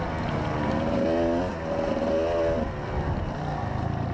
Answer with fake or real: real